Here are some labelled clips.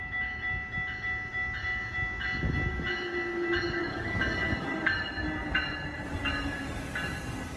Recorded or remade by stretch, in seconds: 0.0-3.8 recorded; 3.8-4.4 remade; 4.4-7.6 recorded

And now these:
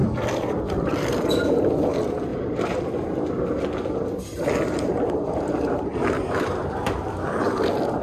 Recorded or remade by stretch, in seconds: 0.0-2.3 recorded; 2.3-3.3 remade; 3.3-4.9 recorded; 4.9-6.9 remade; 6.9-8.0 recorded